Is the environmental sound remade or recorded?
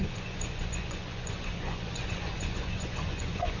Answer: remade